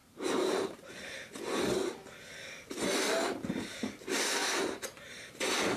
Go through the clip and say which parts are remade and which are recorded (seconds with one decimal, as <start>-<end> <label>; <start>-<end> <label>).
0.0-0.9 remade; 0.9-5.8 recorded